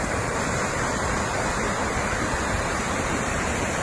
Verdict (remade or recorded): remade